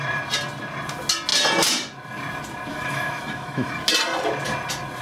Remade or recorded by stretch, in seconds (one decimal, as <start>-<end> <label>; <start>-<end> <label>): 0.0-2.7 recorded; 2.7-3.7 remade; 3.7-5.0 recorded